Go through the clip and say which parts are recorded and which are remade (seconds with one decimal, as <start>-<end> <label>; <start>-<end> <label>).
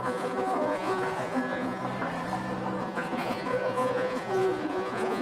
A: 0.0-1.8 remade; 1.8-2.8 recorded; 2.8-5.2 remade